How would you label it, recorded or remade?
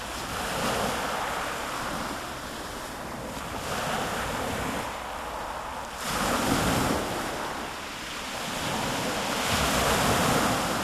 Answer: remade